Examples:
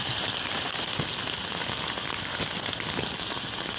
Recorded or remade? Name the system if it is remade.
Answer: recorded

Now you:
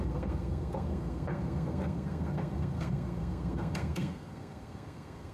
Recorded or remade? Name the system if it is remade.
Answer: remade, codec, SNAC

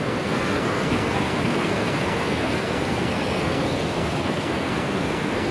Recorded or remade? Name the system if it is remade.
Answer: remade, codec, SNAC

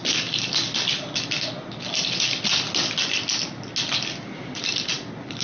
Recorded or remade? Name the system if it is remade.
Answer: recorded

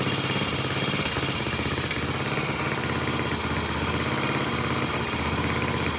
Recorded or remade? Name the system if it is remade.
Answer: recorded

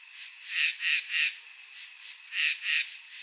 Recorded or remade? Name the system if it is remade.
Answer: recorded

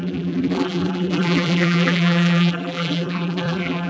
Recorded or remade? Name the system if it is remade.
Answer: remade, vocoder, BigVGAN v2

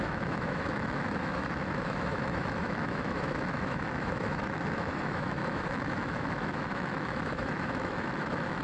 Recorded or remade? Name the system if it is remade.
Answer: remade, autoencoder, DAC-VAE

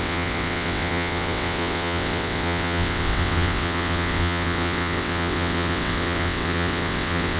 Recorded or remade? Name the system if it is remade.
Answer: remade, vocoder, WaveNeXt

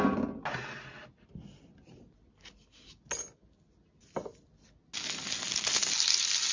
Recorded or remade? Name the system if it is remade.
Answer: recorded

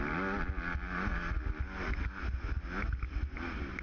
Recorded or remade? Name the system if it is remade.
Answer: recorded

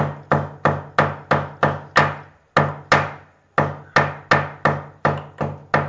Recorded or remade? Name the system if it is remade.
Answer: recorded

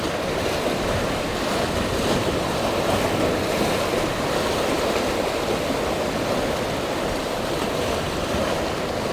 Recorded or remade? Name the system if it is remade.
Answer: recorded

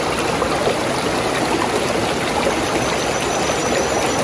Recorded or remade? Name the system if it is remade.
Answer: recorded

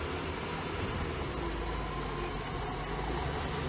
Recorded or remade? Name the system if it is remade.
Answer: recorded